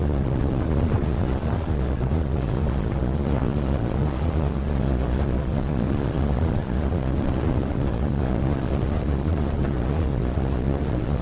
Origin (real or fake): fake